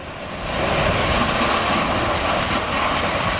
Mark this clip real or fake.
real